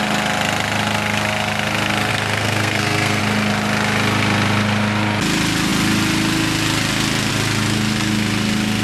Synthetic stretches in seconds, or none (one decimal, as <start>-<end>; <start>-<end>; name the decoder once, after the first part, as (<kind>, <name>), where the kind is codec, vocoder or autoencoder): 2.1-3.2 (codec, SNAC)